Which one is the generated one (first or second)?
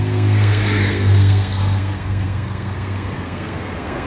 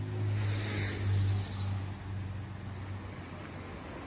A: first